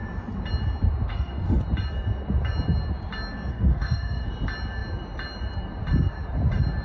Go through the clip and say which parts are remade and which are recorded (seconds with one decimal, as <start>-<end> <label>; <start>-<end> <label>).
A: 0.0-1.1 recorded; 1.1-1.6 remade; 1.6-3.5 recorded; 3.5-4.3 remade; 4.3-6.8 recorded